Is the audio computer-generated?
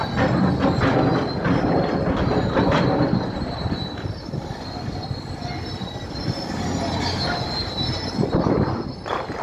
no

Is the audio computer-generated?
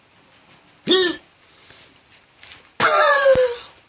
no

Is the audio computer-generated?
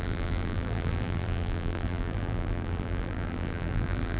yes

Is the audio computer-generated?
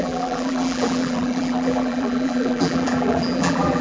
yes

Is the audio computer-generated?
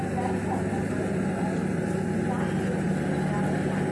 no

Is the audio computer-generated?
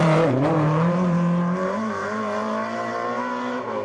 yes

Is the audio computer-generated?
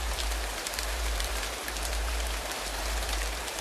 yes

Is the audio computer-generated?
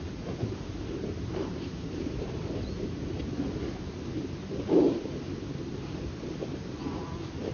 yes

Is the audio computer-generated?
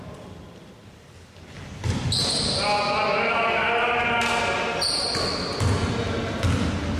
no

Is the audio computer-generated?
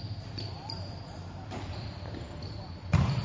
yes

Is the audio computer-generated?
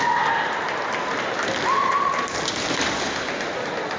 no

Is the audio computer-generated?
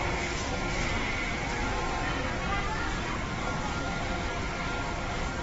no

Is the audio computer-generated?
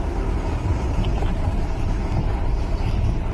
no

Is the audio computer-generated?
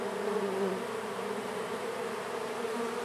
yes